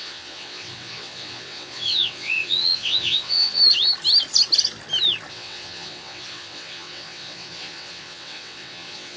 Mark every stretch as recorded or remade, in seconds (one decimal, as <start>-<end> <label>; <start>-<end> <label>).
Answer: 0.0-3.6 remade; 3.6-5.3 recorded; 5.3-9.2 remade